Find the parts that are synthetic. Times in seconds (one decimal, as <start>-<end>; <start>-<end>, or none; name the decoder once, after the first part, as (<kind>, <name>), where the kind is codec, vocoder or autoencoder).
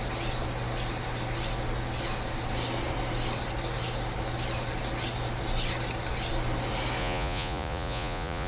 7.0-8.5 (vocoder, Vocos)